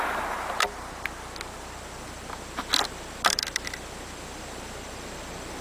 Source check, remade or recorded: recorded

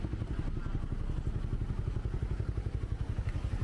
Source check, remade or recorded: recorded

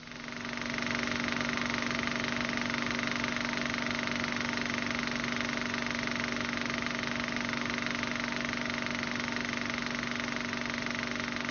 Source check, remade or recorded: recorded